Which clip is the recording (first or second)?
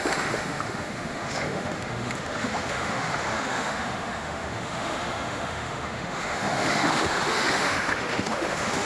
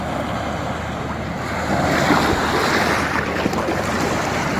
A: second